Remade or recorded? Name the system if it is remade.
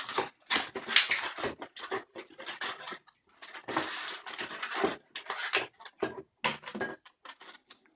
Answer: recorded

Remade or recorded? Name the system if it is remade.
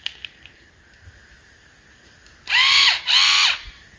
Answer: recorded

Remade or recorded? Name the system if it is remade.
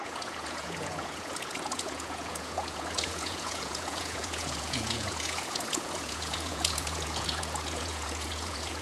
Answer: remade, vocoder, Vocos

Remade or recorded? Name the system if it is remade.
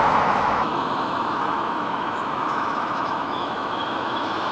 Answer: remade, autoencoder, DAC-VAE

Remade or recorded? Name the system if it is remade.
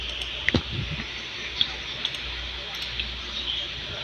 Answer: recorded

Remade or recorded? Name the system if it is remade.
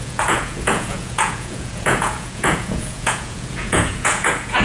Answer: remade, vocoder, Vocos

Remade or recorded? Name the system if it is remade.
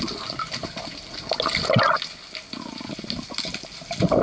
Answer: recorded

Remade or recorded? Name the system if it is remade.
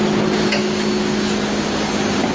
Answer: recorded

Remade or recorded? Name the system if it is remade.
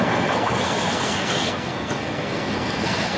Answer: remade, codec, SNAC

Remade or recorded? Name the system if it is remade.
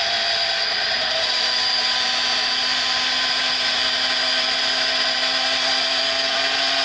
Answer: recorded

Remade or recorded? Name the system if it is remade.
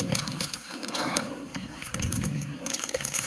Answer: remade, codec, SNAC